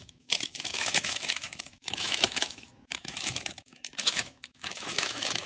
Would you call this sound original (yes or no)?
no